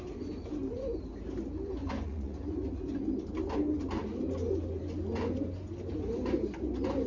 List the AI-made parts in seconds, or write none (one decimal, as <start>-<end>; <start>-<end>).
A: 1.8-2.4